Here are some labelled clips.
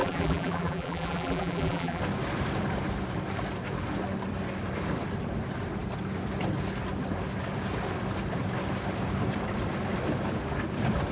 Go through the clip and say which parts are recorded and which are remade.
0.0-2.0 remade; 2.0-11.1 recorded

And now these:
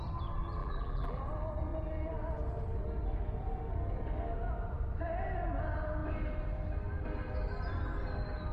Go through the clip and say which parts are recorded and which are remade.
0.0-0.6 recorded; 0.6-1.2 remade; 1.2-8.5 recorded

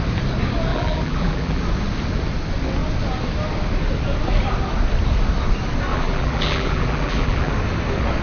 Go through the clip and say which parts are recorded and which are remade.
0.0-0.7 recorded; 0.7-1.6 remade; 1.6-5.9 recorded; 5.9-7.5 remade; 7.5-8.2 recorded

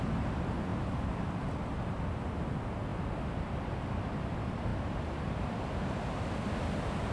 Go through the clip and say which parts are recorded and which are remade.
0.0-0.7 recorded; 0.7-1.3 remade; 1.3-4.7 recorded; 4.7-6.5 remade; 6.5-7.1 recorded

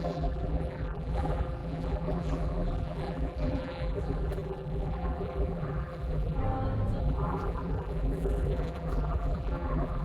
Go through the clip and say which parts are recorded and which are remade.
0.0-6.4 remade; 6.4-7.0 recorded; 7.0-10.0 remade

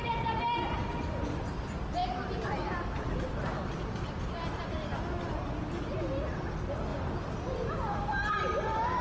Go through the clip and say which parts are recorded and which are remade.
0.0-9.0 recorded

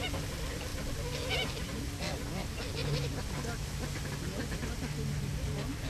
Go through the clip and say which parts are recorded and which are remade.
0.0-2.8 recorded; 2.8-3.3 remade; 3.3-4.6 recorded; 4.6-5.9 remade